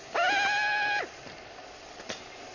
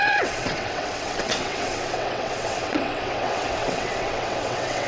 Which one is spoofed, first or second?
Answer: second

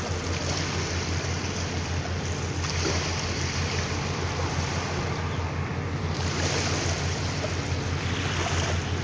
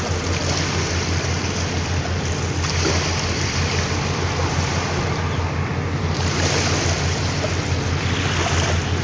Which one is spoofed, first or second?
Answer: second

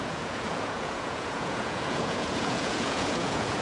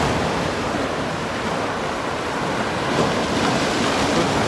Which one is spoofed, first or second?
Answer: first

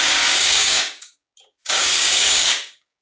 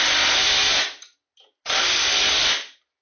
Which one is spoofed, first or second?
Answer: first